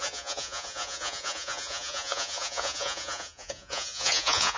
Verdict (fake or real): fake